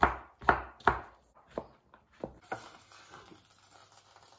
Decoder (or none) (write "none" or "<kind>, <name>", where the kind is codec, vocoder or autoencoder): none